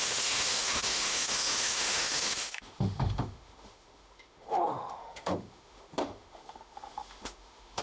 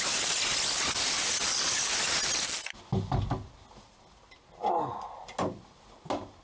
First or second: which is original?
second